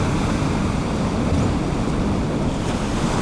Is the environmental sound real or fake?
fake